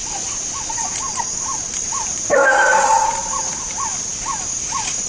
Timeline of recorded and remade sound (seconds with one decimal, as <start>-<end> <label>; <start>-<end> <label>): 0.0-3.1 remade; 3.1-5.1 recorded